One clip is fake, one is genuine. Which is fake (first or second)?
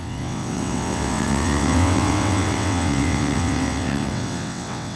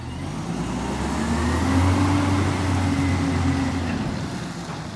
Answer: first